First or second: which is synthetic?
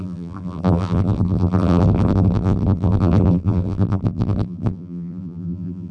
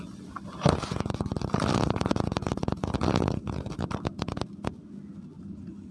first